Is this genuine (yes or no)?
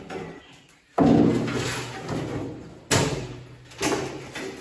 yes